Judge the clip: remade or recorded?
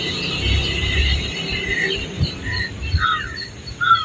remade